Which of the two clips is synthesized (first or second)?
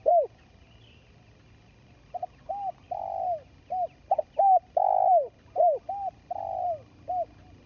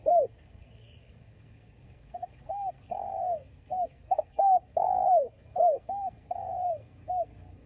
second